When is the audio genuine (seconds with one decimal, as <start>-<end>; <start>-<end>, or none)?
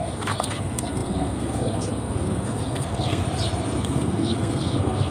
3.2-3.8